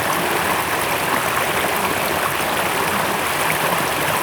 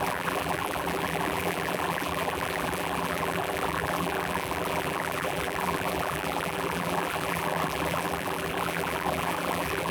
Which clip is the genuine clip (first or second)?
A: first